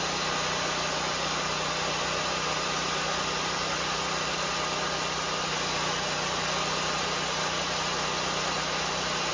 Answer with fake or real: real